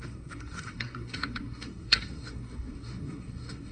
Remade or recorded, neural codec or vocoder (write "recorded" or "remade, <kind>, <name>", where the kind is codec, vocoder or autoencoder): remade, codec, SNAC